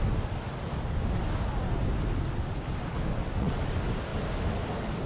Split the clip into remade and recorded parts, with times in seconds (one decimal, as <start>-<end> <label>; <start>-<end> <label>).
0.0-3.1 recorded; 3.1-3.6 remade; 3.6-5.1 recorded